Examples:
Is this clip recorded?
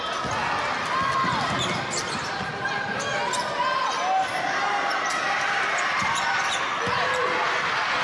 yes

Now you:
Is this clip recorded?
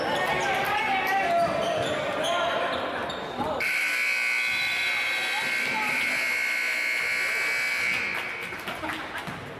yes